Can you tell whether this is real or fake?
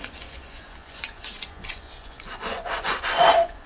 fake